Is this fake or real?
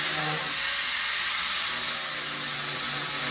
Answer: real